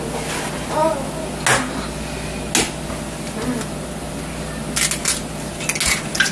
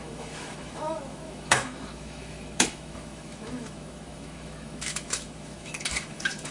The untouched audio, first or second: first